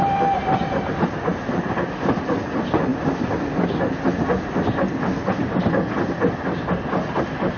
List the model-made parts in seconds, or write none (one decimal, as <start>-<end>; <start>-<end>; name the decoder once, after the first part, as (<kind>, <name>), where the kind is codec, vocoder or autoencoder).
none